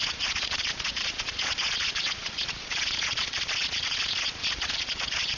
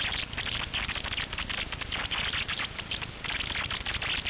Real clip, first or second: second